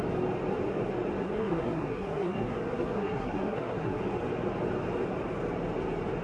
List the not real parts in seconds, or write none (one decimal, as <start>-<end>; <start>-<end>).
1.2-4.0

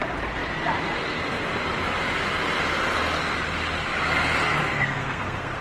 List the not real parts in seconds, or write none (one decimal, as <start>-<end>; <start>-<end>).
4.6-5.6

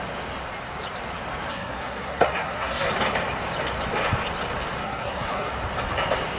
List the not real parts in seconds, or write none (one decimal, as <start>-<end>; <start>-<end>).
1.5-2.9; 4.8-5.5

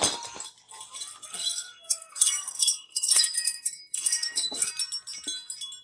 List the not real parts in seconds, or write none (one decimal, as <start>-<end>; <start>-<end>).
1.3-4.7

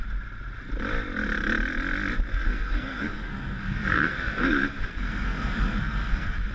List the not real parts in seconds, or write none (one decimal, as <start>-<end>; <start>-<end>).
2.3-6.5

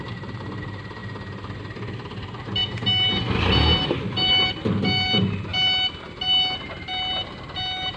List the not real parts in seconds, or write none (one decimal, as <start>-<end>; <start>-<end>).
none